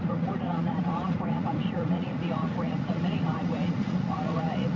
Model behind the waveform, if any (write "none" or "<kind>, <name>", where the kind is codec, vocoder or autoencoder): vocoder, Vocos